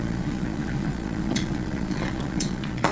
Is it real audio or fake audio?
fake